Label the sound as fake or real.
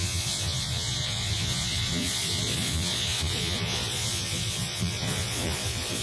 fake